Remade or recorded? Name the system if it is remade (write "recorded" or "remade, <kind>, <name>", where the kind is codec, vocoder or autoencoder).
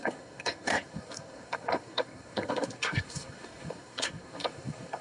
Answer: remade, codec, SNAC